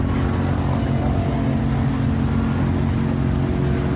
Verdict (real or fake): real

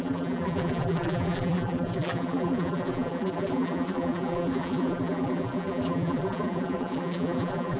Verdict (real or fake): fake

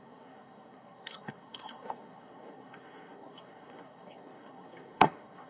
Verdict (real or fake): fake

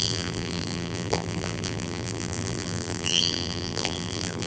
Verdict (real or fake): fake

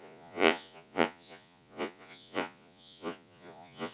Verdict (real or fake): fake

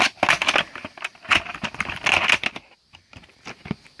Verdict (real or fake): real